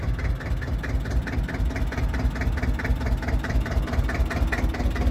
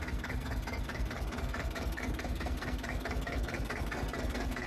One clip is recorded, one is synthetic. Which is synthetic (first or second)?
second